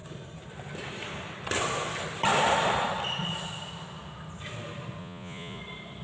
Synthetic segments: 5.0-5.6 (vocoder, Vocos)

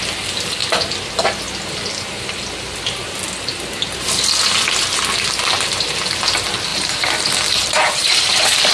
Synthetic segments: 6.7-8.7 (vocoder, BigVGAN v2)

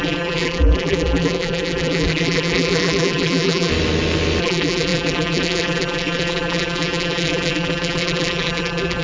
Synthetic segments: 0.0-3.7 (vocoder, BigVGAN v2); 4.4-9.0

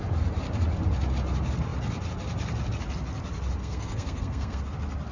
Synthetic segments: 3.6-4.6 (codec, SNAC)